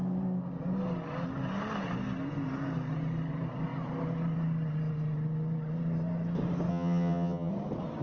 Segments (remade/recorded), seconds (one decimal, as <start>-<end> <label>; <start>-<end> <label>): 0.0-6.7 recorded; 6.7-7.5 remade; 7.5-8.0 recorded